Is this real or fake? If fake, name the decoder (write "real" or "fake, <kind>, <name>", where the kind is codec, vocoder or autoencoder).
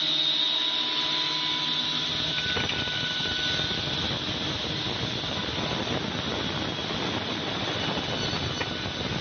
real